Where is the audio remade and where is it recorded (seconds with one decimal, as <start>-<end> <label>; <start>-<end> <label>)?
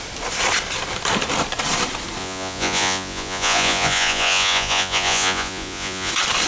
0.0-2.2 recorded; 2.2-6.1 remade; 6.1-6.5 recorded